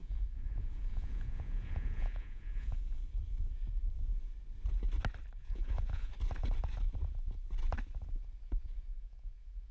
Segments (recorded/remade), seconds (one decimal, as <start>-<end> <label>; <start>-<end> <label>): 0.0-3.0 remade; 3.0-5.4 recorded; 5.4-6.1 remade; 6.1-8.9 recorded; 8.9-9.7 remade